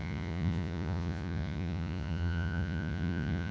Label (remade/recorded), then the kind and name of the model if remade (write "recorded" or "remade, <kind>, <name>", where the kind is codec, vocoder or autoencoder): remade, vocoder, Vocos